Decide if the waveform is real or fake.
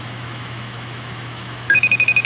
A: fake